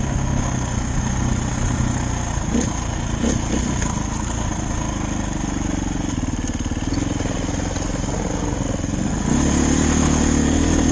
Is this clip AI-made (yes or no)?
no